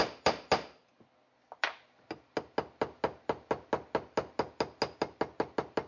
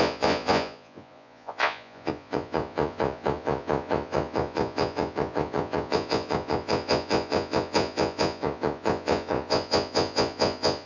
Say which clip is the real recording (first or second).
first